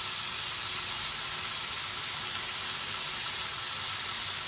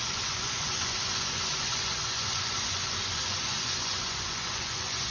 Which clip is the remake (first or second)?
second